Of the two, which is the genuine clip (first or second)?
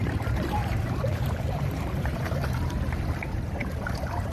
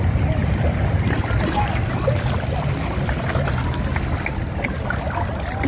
second